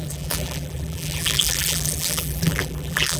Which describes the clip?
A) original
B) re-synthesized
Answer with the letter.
B